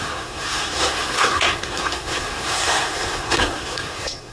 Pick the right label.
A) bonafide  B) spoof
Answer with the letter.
B